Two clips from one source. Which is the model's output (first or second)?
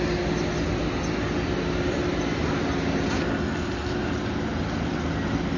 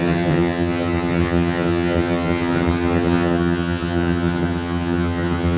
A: second